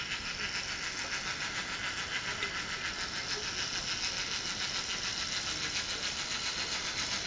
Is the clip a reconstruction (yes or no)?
no